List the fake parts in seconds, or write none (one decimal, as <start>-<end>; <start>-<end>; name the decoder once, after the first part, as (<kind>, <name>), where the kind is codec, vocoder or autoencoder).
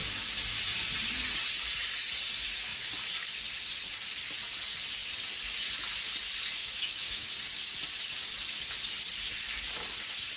6.6-7.3 (autoencoder, DAC-VAE)